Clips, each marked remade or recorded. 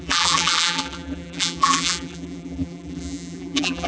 remade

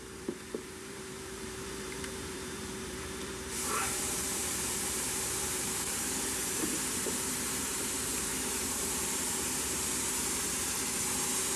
remade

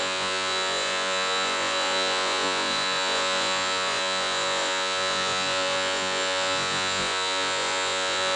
remade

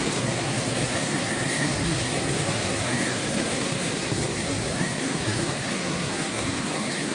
remade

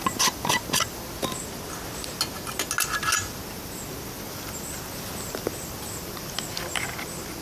recorded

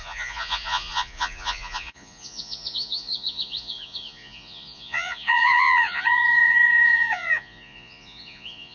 remade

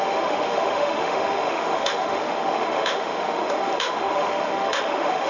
remade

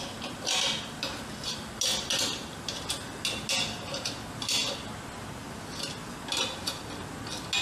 recorded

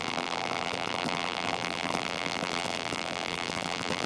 remade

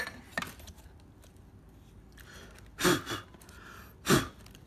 recorded